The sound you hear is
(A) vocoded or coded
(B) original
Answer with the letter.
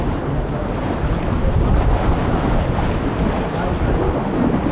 B